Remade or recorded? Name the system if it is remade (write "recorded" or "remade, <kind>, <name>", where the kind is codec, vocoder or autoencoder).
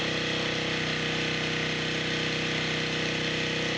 recorded